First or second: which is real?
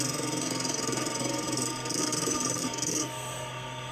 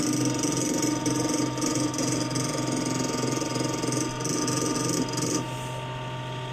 second